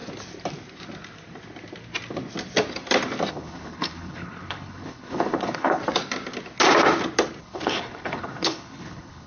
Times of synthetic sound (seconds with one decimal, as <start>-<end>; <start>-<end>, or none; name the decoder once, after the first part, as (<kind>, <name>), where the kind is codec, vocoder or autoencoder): 3.3-5.8 (codec, HILCodec); 7.4-9.3